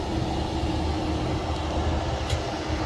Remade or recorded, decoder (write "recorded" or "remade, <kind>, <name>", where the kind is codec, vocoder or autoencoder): recorded